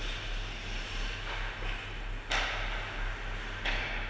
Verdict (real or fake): real